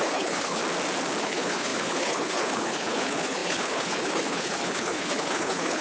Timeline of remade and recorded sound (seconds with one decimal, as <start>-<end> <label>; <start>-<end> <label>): 0.0-0.6 remade; 0.6-1.2 recorded; 1.2-5.8 remade